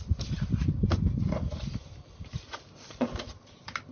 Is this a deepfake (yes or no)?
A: no